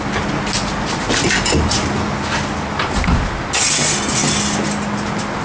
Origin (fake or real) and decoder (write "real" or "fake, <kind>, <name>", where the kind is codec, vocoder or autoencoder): real